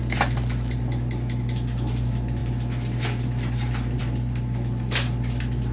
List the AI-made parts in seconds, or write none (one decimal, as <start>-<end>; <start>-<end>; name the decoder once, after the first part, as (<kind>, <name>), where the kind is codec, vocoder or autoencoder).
none